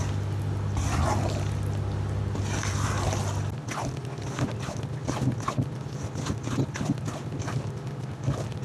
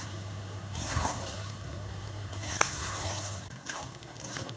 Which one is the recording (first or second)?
first